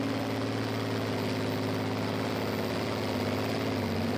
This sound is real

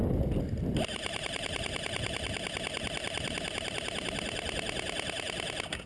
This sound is fake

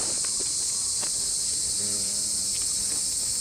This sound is real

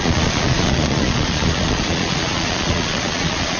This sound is fake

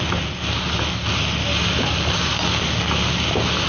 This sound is real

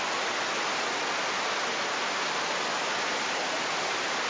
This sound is real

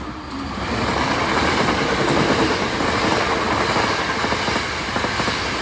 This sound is real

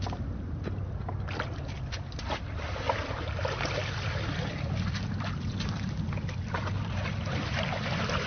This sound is real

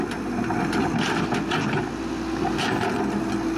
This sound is real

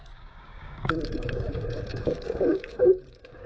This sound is fake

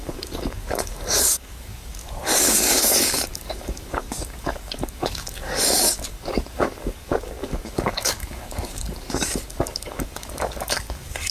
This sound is fake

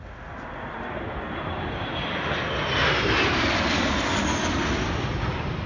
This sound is real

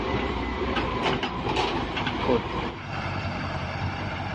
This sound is fake